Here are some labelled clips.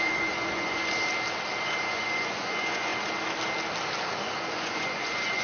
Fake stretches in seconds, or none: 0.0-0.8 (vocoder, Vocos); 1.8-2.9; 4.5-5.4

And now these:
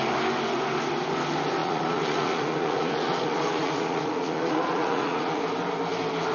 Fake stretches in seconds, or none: 1.6-5.4 (vocoder, Vocos)

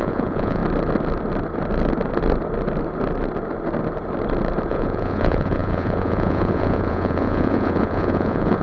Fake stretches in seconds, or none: 0.0-0.6 (vocoder, Vocos); 4.7-8.6

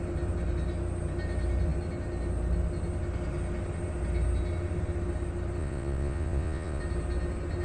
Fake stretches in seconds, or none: 5.6-6.8 (vocoder, Vocos)

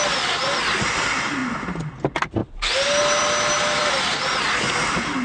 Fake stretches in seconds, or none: none

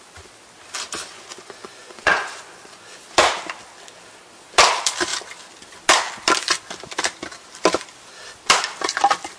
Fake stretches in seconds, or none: 1.0-3.0 (vocoder, Vocos)

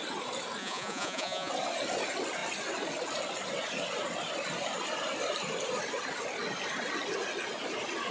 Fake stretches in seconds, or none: 0.6-1.5 (vocoder, Vocos)

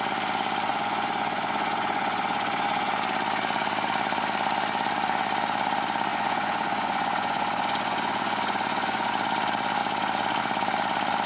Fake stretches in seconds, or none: 0.7-2.9 (vocoder, Vocos); 6.1-9.1